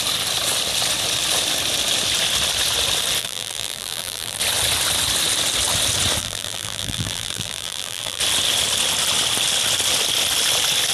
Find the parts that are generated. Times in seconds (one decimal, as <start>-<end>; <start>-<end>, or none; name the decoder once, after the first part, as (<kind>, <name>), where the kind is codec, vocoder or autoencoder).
3.2-4.4 (vocoder, BigVGAN v2); 6.2-8.2